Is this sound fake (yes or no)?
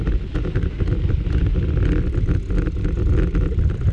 no